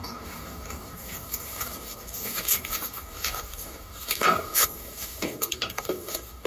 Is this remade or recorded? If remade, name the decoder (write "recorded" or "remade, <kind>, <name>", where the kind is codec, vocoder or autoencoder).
remade, codec, DAC